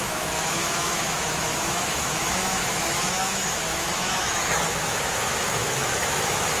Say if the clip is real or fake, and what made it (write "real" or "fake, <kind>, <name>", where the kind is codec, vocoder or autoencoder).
fake, autoencoder, DAC-VAE